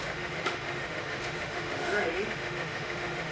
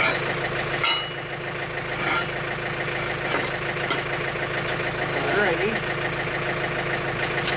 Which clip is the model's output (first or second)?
first